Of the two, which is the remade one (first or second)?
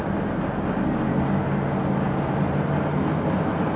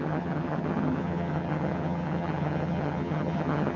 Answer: second